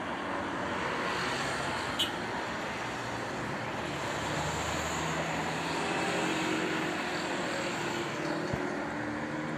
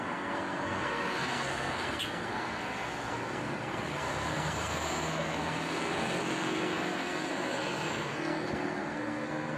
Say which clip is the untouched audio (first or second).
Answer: first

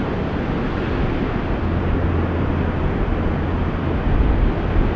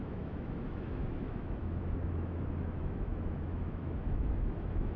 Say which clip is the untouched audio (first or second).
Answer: first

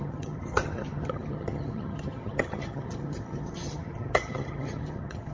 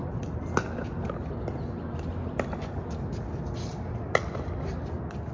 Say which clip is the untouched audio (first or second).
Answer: second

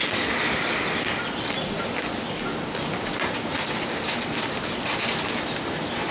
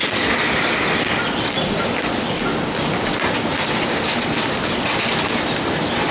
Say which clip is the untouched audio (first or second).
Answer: first